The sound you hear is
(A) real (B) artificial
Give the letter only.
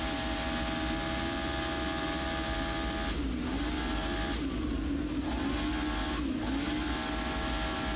A